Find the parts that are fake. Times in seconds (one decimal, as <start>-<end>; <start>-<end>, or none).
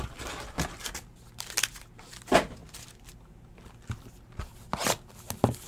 none